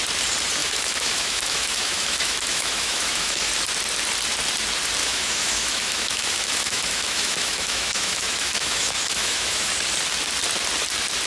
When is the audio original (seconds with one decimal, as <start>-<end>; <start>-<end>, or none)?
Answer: 0.0-0.6; 3.5-5.0; 9.7-11.3